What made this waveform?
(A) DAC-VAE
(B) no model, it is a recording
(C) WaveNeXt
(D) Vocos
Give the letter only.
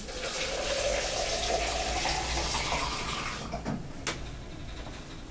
B